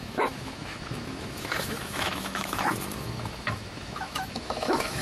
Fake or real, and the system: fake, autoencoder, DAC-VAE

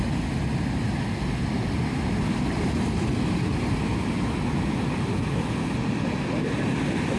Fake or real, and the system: real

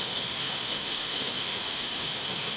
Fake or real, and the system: fake, autoencoder, DAC-VAE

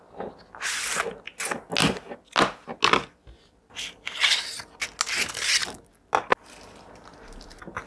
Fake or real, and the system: real